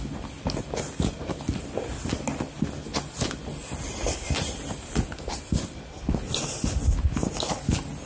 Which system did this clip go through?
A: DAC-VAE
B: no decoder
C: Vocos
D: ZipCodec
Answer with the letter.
B